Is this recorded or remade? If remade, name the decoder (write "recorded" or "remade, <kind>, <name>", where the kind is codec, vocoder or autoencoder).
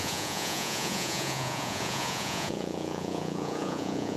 remade, vocoder, Vocos